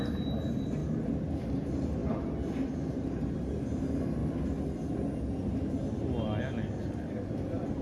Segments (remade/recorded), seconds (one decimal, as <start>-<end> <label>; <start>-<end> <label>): 0.0-0.8 remade; 0.8-1.4 recorded; 1.4-2.0 remade; 2.0-2.9 recorded; 2.9-4.2 remade; 4.2-6.4 recorded; 6.4-7.8 remade